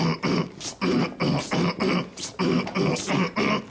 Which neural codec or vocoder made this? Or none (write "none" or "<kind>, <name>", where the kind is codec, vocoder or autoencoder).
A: none